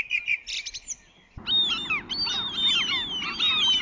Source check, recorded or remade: recorded